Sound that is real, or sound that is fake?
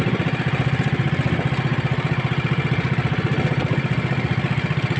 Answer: real